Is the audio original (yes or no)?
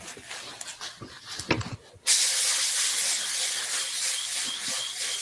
yes